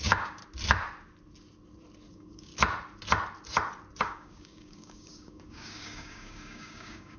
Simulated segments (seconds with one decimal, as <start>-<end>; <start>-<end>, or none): 0.0-0.4; 2.1-2.5; 4.0-7.2